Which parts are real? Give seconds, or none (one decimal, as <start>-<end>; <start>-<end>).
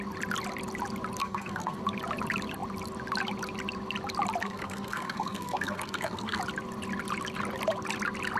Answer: 0.0-1.2; 1.8-4.4; 6.4-8.4